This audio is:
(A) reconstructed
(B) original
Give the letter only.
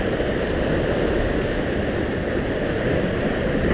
B